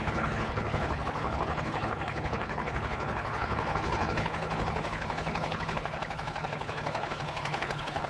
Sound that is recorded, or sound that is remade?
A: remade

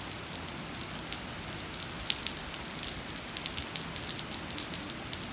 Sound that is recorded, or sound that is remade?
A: recorded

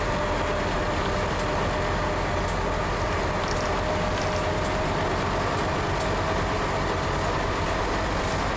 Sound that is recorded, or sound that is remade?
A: recorded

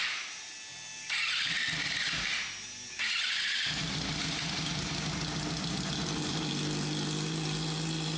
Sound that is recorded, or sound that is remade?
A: recorded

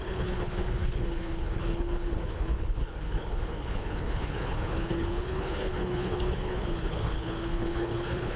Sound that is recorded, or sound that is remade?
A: remade